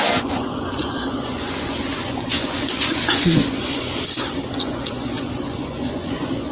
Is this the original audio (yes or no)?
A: no